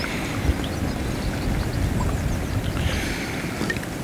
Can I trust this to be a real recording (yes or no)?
yes